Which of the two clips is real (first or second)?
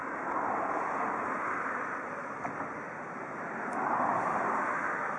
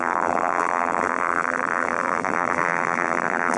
first